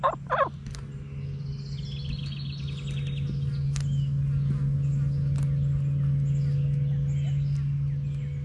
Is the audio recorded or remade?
recorded